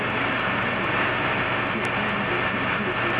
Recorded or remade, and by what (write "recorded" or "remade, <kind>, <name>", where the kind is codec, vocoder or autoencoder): recorded